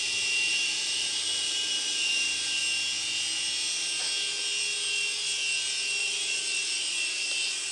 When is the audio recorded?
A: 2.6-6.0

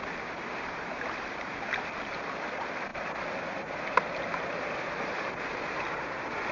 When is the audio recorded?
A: 0.0-6.5

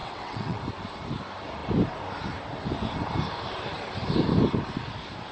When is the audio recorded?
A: 0.6-5.3